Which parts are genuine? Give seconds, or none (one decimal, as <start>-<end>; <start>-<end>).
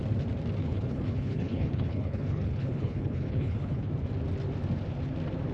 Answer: 0.0-0.6; 3.9-5.5